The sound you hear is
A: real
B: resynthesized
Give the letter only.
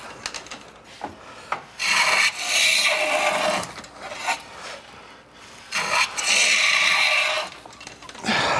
A